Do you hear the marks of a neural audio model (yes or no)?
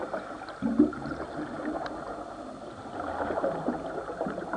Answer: no